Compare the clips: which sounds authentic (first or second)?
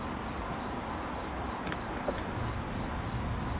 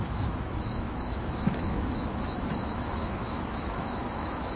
first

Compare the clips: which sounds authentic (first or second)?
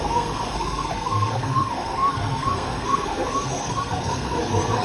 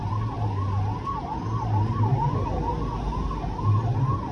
second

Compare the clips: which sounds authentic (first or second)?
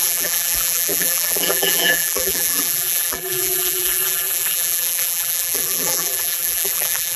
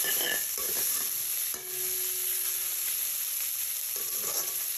second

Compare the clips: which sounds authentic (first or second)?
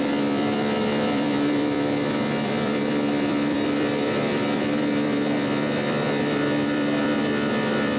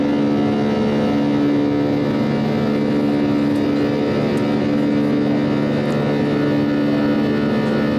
second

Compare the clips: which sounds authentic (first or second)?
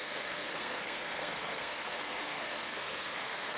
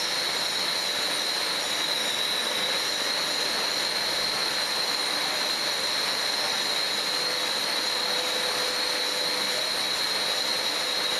second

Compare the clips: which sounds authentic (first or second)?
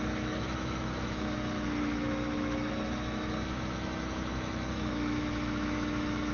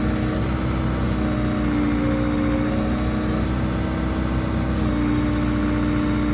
second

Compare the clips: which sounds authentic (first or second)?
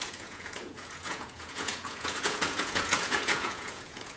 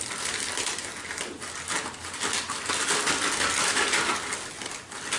second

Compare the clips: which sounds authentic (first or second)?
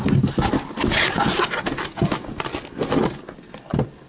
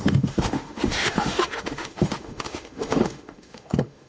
first